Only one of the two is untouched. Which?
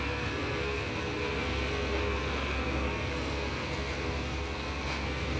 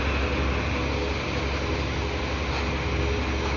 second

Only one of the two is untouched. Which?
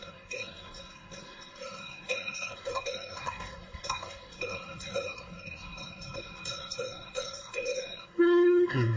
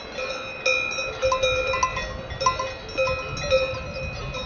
second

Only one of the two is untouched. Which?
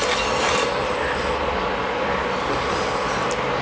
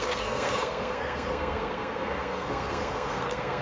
first